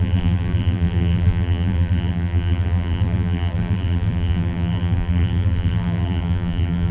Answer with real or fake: fake